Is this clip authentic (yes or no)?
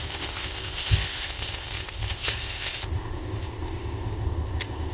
no